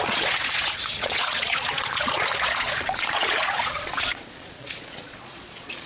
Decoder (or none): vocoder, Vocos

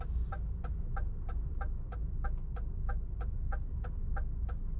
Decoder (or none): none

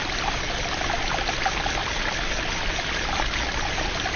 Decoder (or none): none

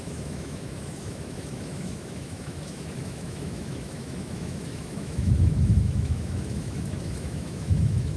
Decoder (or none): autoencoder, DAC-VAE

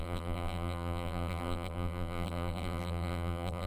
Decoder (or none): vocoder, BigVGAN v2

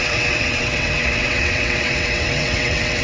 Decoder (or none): vocoder, WaveNeXt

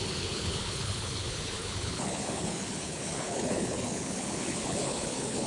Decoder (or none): codec, HILCodec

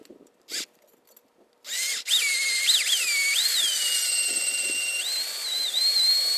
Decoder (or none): none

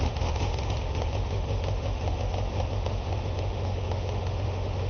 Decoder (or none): autoencoder, DAC-VAE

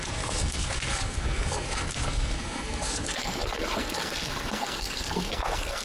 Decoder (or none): codec, SNAC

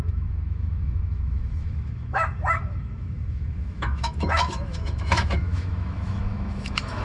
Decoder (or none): autoencoder, DAC-VAE